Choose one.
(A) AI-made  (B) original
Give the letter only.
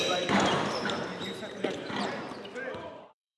A